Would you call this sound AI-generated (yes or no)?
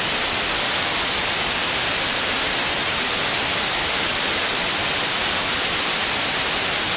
no